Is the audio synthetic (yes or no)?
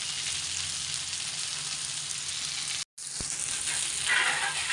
no